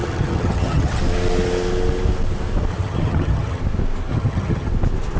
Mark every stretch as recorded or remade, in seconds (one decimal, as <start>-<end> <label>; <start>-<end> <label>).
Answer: 0.0-1.0 remade; 1.0-2.7 recorded; 2.7-3.6 remade; 3.6-4.1 recorded; 4.1-4.7 remade; 4.7-5.2 recorded